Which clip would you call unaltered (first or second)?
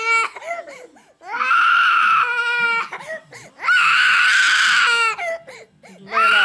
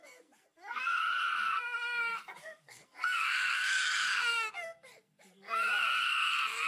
first